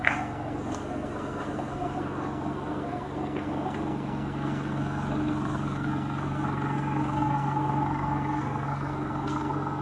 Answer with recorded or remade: remade